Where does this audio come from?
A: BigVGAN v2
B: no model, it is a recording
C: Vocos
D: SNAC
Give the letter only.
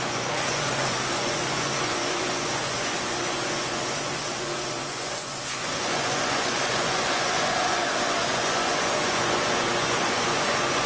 C